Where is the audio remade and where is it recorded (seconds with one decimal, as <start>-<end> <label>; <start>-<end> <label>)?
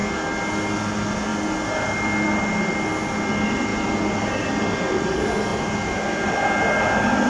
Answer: 0.0-7.3 recorded